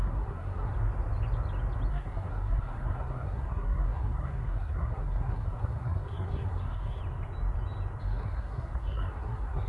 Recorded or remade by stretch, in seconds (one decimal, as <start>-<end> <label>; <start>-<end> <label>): 0.0-0.7 remade; 0.7-1.9 recorded; 1.9-7.0 remade; 7.0-8.0 recorded; 8.0-9.7 remade